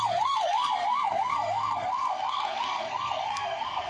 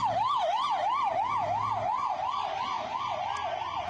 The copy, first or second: first